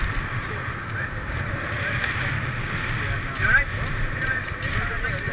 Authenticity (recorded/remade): recorded